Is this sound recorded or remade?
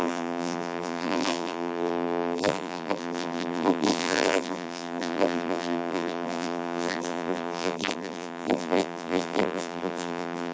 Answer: remade